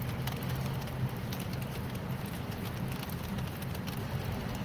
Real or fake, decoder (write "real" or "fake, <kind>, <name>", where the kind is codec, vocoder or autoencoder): real